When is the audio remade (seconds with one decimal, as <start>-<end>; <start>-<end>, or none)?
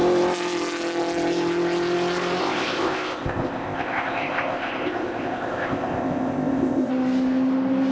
2.4-6.9